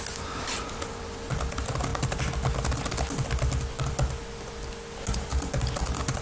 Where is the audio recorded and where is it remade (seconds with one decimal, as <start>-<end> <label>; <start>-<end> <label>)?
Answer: 0.0-6.2 recorded